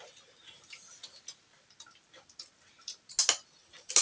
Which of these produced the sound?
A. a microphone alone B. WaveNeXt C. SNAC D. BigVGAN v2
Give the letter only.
A